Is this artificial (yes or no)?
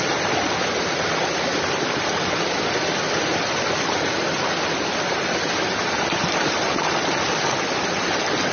no